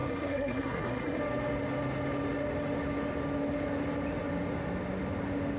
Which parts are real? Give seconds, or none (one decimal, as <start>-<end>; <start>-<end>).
1.2-5.6